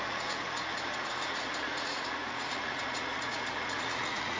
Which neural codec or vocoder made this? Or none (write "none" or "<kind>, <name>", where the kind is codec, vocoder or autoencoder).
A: vocoder, Vocos